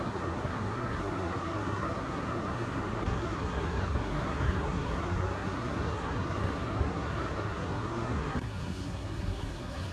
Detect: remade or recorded remade